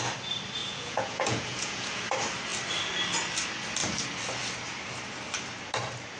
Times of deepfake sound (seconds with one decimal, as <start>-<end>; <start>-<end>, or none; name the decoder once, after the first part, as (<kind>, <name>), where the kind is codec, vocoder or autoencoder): 0.6-2.0 (vocoder, Vocos)